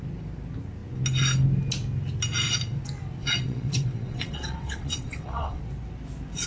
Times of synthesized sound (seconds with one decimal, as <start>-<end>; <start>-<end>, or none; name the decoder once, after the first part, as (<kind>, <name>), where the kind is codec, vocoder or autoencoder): 3.2-5.6 (vocoder, WaveNeXt)